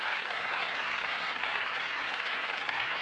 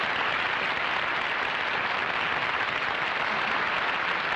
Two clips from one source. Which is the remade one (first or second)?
first